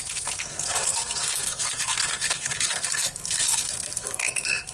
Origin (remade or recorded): remade